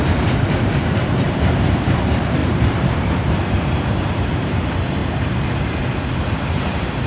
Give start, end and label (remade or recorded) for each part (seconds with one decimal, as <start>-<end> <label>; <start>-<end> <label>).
0.0-7.1 remade